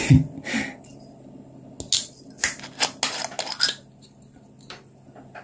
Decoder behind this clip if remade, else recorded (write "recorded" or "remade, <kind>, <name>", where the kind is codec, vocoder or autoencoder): recorded